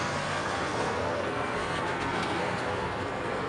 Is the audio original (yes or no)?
no